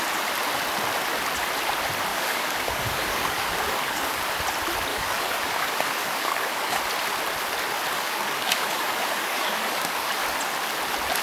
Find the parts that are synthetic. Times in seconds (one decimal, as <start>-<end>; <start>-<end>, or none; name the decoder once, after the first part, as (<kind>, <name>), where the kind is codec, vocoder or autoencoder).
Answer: 2.1-4.2 (codec, DAC); 4.9-6.8; 7.9-10.1